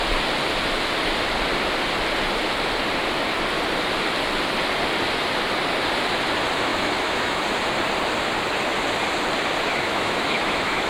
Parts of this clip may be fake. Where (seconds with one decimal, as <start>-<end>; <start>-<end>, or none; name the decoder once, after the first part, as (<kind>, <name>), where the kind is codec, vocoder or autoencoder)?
6.7-7.4 (autoencoder, DAC-VAE); 9.7-10.9